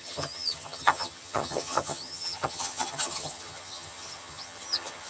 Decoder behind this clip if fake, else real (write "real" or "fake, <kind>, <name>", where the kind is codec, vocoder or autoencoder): fake, vocoder, HiFi-GAN